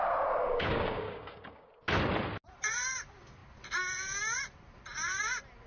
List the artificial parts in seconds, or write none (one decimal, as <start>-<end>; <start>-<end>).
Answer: 0.4-1.7